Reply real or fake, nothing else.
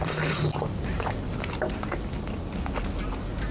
real